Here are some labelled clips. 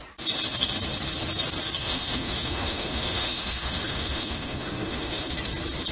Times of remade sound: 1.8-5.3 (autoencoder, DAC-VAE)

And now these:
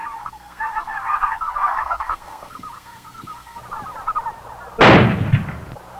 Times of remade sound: 0.0-3.6 (codec, SNAC)